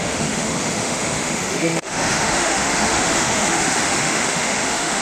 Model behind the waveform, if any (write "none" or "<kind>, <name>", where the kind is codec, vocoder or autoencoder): autoencoder, DAC-VAE